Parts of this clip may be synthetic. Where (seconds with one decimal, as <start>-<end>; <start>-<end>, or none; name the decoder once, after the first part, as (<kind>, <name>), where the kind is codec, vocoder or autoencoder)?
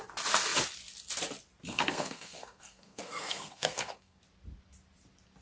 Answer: 1.7-4.2 (codec, SNAC)